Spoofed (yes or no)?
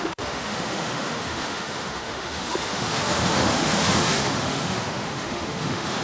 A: yes